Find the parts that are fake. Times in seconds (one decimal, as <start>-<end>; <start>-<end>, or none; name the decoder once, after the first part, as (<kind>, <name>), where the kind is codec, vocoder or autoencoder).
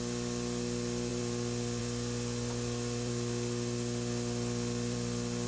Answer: none